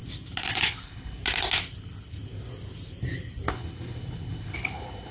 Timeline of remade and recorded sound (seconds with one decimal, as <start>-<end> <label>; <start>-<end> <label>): 0.0-0.5 recorded; 0.5-1.2 remade; 1.2-3.5 recorded; 3.5-5.1 remade